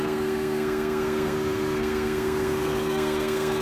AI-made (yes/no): yes